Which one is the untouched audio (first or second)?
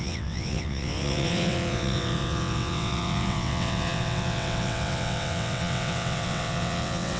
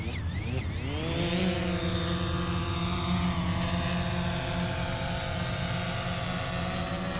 second